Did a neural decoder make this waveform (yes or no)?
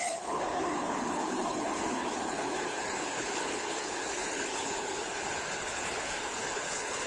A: yes